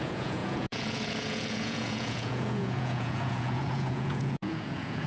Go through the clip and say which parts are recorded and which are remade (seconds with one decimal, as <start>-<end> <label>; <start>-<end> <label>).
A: 0.0-5.1 remade